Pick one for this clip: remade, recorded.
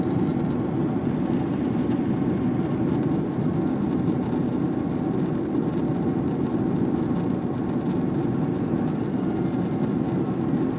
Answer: recorded